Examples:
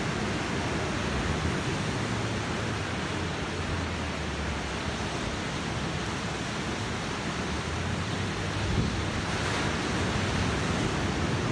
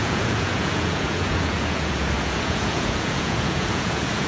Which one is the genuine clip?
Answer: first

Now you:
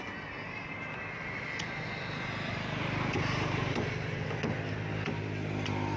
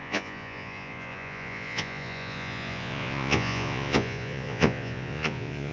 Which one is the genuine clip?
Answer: first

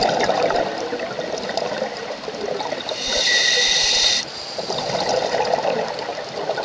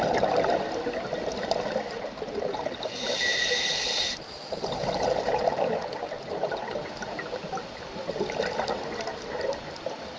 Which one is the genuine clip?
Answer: second